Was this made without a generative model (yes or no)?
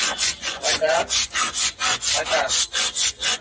no